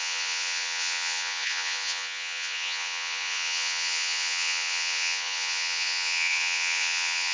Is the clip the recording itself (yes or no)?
no